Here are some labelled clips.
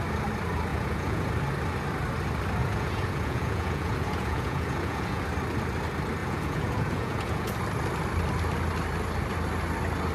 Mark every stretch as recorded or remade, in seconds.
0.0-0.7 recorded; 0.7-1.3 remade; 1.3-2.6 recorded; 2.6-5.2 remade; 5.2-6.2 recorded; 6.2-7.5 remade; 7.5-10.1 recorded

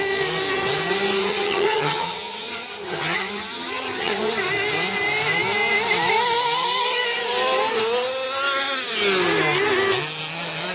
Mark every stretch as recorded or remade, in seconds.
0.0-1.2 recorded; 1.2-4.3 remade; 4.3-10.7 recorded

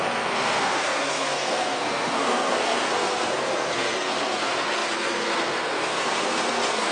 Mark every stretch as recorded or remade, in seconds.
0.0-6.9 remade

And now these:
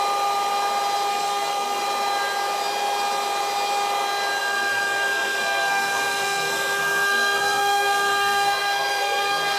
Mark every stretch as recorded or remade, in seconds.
0.0-1.1 recorded; 1.1-1.8 remade; 1.8-4.4 recorded; 4.4-9.6 remade

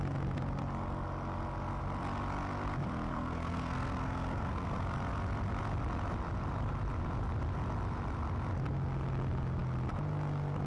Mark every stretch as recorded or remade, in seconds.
0.0-3.1 recorded; 3.1-4.8 remade; 4.8-10.7 recorded